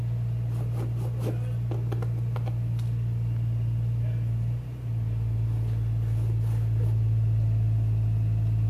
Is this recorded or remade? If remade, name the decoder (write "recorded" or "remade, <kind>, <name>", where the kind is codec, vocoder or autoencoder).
recorded